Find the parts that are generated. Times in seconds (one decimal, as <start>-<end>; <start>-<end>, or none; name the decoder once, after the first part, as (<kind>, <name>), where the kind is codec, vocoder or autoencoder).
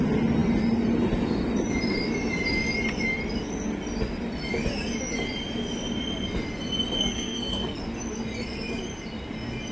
7.0-7.8 (codec, SNAC)